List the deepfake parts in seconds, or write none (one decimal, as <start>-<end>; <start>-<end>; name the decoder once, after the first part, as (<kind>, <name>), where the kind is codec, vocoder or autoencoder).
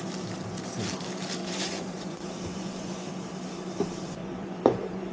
1.4-3.1 (vocoder, Vocos); 4.2-5.1